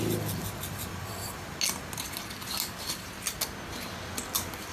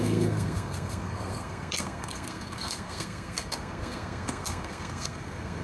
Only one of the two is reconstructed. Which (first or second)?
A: second